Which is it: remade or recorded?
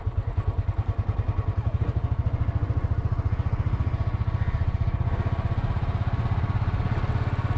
recorded